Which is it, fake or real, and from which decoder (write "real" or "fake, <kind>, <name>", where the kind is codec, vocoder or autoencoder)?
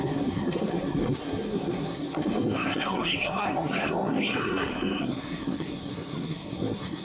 fake, codec, SNAC